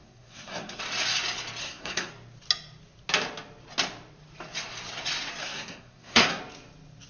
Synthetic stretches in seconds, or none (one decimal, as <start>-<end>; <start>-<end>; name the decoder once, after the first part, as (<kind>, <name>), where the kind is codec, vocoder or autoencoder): 0.0-0.8 (codec, SNAC); 1.6-2.1; 5.4-6.4